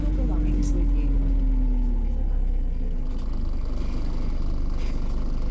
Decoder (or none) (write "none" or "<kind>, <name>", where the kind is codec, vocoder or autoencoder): none